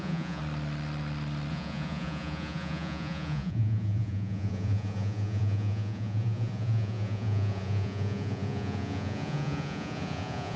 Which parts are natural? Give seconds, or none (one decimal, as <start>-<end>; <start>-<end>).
0.4-1.5